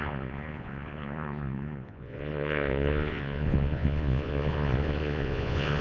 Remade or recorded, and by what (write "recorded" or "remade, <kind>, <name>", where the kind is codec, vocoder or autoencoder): remade, vocoder, Vocos